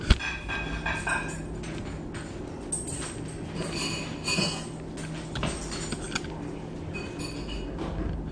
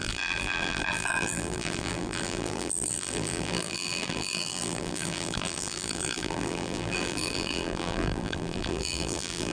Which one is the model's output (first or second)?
second